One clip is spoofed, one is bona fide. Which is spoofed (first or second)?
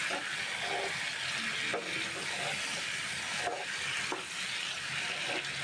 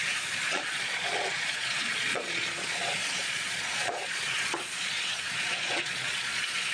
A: second